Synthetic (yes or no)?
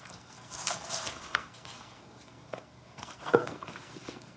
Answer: yes